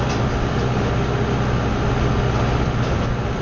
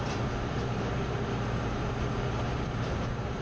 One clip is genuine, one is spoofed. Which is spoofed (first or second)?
second